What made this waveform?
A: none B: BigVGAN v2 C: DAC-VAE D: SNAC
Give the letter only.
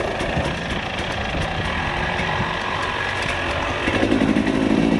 A